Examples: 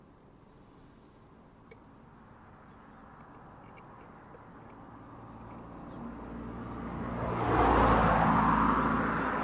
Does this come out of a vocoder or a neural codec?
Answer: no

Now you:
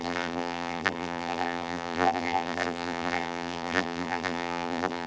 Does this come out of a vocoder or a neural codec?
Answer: yes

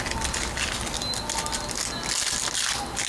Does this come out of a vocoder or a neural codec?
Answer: no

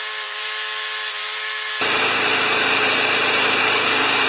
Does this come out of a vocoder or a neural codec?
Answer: yes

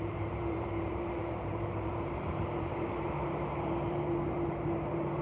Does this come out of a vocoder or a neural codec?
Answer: yes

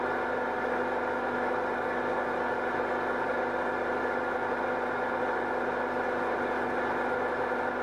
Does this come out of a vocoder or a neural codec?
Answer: no